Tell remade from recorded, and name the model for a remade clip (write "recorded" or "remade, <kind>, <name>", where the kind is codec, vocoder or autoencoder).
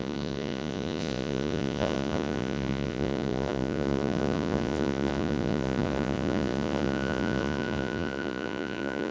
remade, vocoder, Vocos